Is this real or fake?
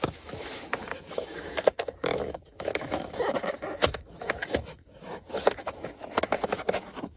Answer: fake